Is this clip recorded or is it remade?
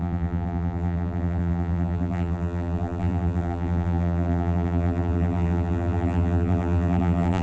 remade